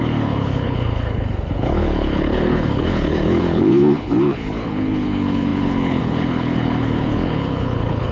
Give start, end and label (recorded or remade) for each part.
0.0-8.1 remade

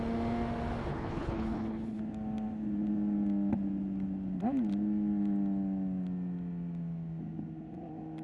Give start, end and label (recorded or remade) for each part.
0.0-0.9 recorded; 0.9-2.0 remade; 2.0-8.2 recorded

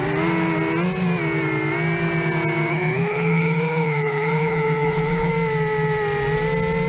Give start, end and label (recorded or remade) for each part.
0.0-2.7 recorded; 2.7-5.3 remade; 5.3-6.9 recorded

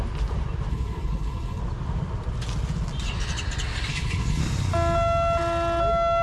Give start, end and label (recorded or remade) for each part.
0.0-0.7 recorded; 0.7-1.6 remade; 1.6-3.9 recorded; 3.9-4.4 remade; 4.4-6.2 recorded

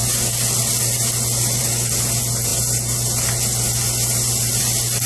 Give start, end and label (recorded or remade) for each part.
0.0-5.1 recorded